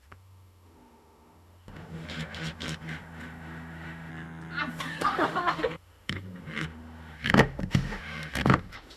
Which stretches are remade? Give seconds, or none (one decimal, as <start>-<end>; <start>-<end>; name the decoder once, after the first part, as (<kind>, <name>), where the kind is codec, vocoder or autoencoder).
0.0-4.1 (autoencoder, DAC-VAE); 4.7-9.0

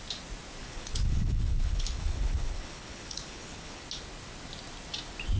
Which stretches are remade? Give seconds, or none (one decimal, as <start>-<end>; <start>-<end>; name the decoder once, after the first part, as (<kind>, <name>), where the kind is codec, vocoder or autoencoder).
0.6-3.8 (codec, HILCodec)

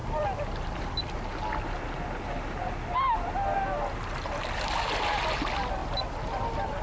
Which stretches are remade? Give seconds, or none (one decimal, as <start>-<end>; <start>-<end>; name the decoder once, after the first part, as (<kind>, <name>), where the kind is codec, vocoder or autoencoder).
0.0-1.3 (vocoder, BigVGAN v2); 5.8-6.8

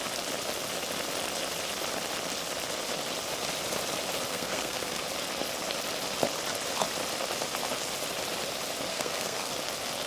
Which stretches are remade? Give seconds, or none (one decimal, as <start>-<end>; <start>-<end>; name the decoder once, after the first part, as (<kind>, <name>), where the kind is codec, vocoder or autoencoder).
4.3-5.0 (codec, SNAC); 8.9-9.5

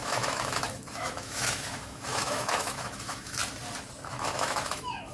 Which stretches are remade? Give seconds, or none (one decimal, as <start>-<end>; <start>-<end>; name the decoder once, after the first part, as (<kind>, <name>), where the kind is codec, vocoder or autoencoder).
0.0-3.4 (autoencoder, DAC-VAE); 4.1-5.1